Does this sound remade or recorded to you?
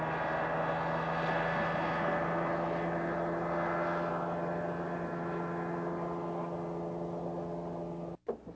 recorded